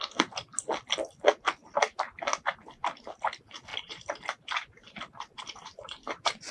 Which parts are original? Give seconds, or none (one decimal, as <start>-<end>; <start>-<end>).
0.0-1.6; 2.2-3.7